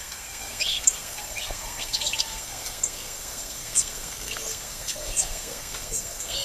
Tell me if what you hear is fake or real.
fake